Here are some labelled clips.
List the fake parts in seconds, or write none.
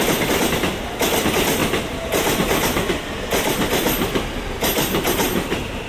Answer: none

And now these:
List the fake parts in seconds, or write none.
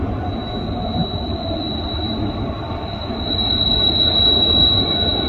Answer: none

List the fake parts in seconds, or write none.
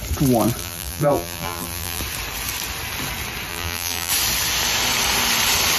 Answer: 0.6-2.0 (vocoder, BigVGAN v2); 3.5-4.1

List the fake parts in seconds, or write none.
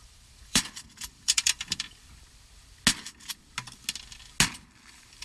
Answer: 0.0-2.1 (vocoder, BigVGAN v2)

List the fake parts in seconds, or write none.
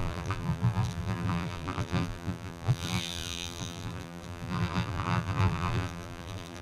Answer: 0.0-6.6 (vocoder, BigVGAN v2)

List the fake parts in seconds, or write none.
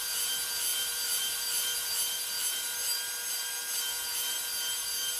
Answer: none